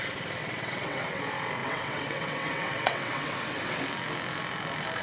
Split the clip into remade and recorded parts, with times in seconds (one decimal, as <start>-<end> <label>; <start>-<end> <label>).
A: 0.0-0.4 recorded; 0.4-1.2 remade; 1.2-1.6 recorded; 1.6-3.8 remade; 3.8-5.0 recorded